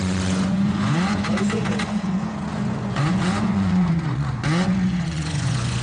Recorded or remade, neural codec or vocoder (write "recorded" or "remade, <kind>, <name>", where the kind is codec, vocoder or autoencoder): remade, vocoder, Vocos